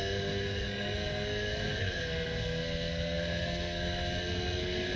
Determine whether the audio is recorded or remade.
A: remade